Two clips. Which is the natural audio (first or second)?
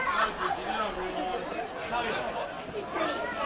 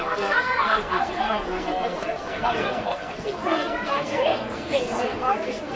first